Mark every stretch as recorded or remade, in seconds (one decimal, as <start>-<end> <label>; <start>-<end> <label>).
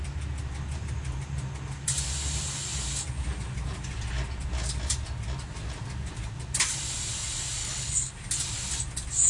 0.0-7.6 recorded; 7.6-8.1 remade; 8.1-9.3 recorded